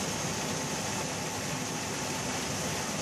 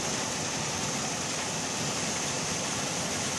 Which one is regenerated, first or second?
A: second